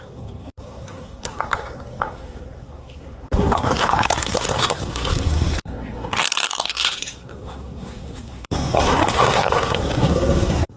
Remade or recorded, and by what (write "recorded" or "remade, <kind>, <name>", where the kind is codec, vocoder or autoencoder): remade, codec, SNAC